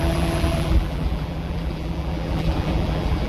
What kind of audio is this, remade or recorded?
remade